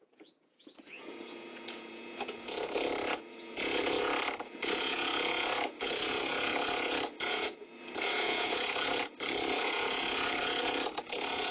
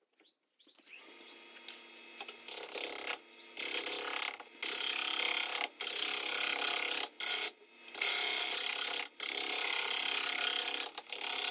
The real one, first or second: second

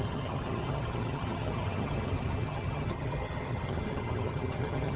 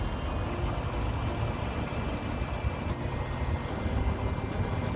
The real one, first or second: second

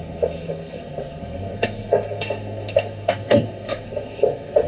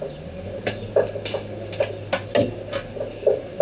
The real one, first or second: second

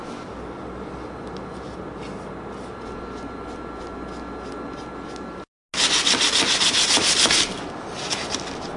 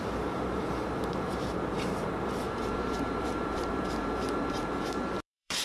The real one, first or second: first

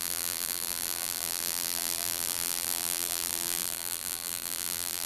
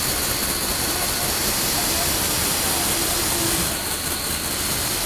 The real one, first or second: second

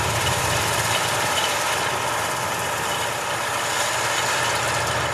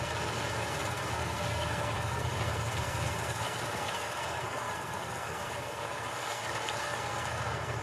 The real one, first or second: first